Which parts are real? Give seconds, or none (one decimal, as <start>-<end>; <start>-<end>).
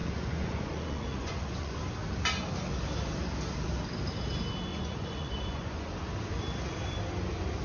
1.8-4.7; 5.9-7.6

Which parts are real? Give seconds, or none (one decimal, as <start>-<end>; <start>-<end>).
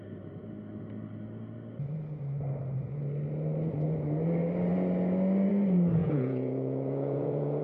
0.0-6.0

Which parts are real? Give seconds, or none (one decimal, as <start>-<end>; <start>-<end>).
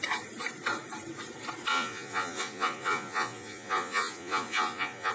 0.0-1.7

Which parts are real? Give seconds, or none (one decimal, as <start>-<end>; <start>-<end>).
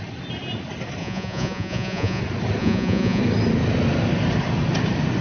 0.0-1.0; 2.2-2.6; 3.2-5.2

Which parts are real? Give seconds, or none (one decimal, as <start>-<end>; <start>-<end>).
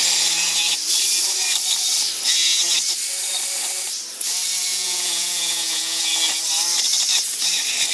0.0-4.7; 6.1-7.9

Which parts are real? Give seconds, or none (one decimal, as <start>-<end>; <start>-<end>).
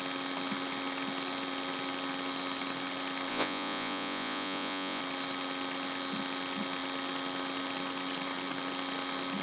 0.0-3.3; 5.0-9.4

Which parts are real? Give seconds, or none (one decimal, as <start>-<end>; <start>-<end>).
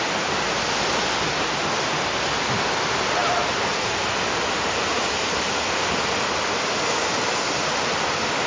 0.0-8.5